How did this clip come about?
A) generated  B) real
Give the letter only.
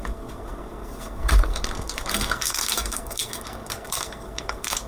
A